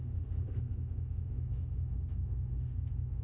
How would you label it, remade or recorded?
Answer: remade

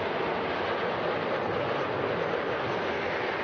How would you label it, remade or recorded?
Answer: recorded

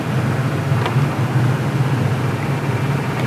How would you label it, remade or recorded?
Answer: recorded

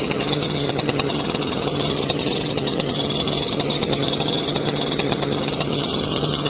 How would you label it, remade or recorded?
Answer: remade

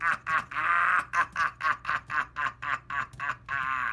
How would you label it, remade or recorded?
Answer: recorded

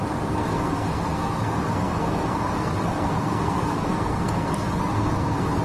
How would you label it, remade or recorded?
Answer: remade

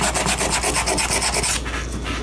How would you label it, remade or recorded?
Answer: recorded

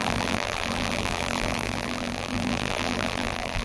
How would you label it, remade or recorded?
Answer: remade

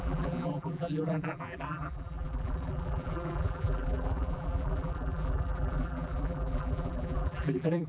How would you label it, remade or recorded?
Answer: remade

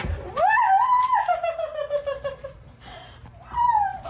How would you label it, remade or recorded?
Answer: remade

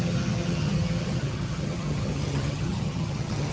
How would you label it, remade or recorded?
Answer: remade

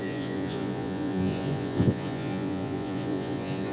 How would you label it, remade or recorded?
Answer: remade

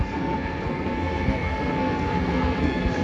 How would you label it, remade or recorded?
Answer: remade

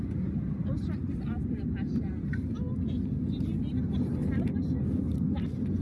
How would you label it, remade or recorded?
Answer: recorded